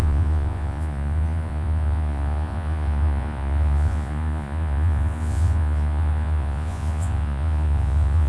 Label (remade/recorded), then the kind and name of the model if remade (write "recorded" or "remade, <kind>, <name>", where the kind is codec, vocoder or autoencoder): remade, vocoder, Vocos